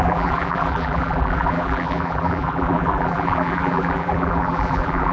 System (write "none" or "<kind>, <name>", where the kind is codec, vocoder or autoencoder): vocoder, BigVGAN v2